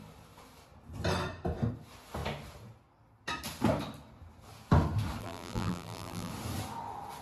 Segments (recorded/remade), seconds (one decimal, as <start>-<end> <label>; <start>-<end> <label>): 0.0-5.2 recorded; 5.2-6.3 remade; 6.3-7.2 recorded